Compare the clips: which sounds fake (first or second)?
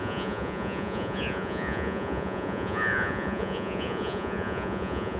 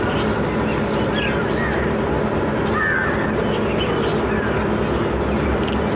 first